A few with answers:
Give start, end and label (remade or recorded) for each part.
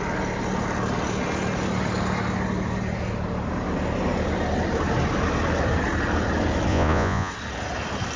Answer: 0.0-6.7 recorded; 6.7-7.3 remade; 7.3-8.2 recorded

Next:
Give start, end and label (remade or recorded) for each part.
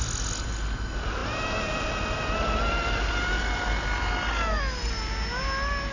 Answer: 0.0-5.9 recorded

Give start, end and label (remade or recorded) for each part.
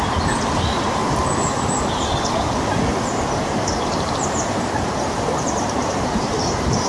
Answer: 0.0-1.0 remade; 1.0-3.4 recorded; 3.4-6.9 remade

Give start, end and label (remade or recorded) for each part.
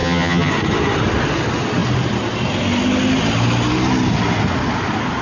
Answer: 0.0-0.5 remade; 0.5-5.2 recorded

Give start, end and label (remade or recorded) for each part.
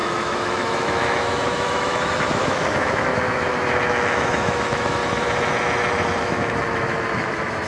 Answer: 0.0-5.0 remade; 5.0-6.2 recorded; 6.2-7.7 remade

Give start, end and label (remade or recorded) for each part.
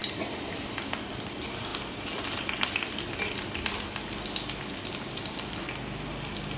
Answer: 0.0-0.6 remade; 0.6-6.6 recorded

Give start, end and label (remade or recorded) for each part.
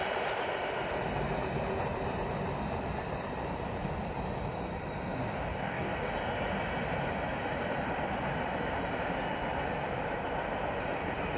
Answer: 0.0-5.5 recorded; 5.5-6.1 remade; 6.1-11.4 recorded